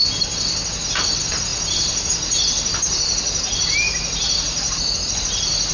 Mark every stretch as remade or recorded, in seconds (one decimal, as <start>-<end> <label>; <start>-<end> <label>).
0.0-5.7 recorded